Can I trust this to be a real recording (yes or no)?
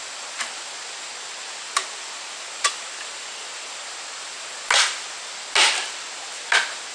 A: yes